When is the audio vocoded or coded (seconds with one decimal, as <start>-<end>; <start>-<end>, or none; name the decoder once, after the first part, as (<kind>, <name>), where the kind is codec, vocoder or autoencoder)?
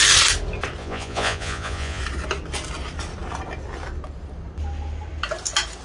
0.8-2.0 (vocoder, Vocos)